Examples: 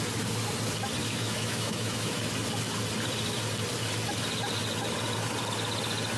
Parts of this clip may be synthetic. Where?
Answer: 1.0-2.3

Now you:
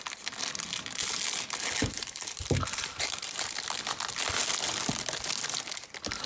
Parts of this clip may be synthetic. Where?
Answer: 1.8-4.9

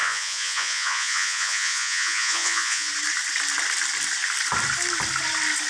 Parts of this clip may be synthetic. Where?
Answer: 0.0-2.9